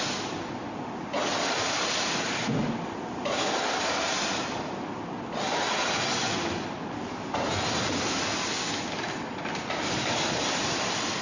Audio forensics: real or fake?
real